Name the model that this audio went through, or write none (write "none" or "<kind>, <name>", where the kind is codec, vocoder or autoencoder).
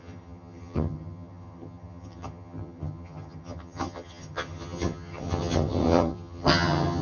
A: vocoder, HiFi-GAN